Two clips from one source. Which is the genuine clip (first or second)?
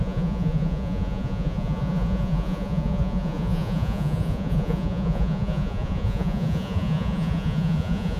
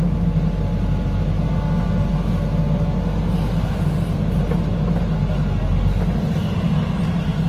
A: second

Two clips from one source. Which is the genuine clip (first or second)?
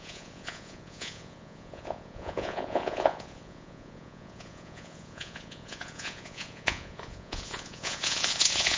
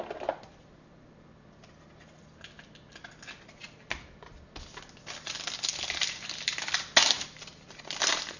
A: second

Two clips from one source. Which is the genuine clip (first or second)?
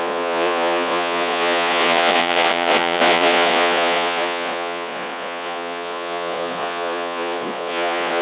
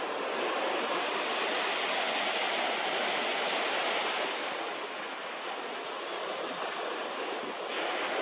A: second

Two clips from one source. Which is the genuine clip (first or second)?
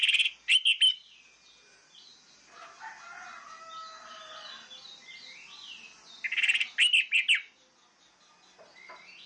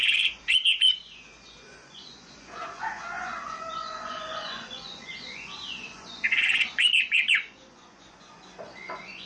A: first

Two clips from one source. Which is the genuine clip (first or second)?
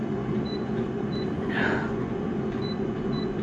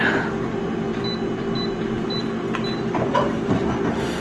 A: second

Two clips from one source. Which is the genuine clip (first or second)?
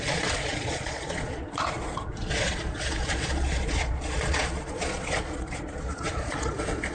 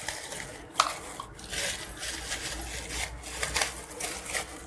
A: second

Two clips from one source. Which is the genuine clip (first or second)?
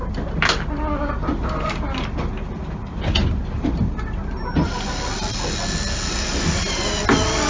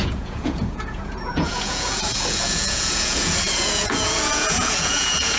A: first